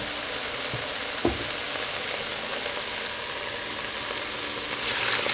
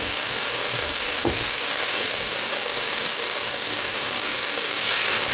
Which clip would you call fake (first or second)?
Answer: second